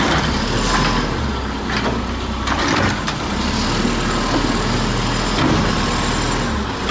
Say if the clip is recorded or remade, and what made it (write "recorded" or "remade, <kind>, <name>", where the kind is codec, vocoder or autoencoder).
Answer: recorded